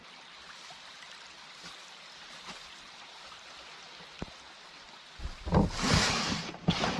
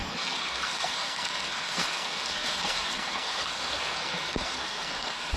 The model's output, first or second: second